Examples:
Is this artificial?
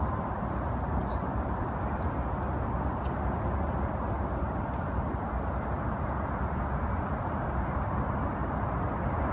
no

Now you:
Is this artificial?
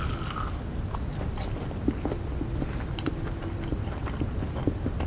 no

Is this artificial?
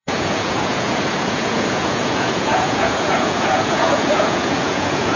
yes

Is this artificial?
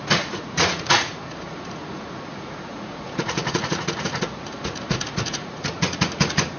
yes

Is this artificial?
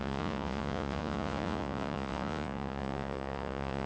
yes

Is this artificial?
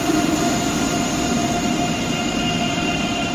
no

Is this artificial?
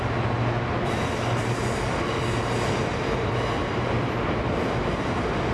no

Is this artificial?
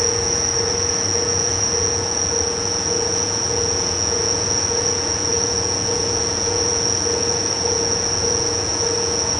yes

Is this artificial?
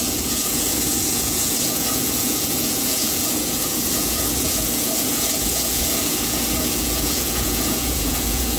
yes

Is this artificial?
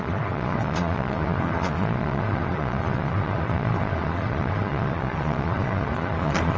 yes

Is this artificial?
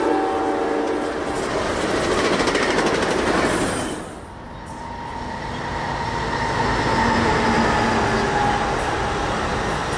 no